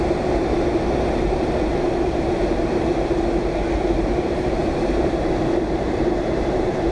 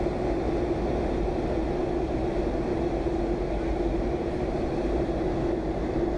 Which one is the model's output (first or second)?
first